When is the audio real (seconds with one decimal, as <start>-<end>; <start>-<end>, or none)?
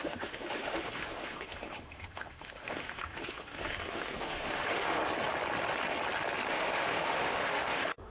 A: 5.0-6.5